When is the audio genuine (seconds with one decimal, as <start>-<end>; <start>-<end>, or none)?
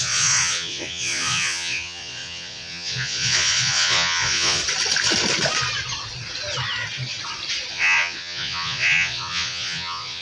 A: 4.6-7.7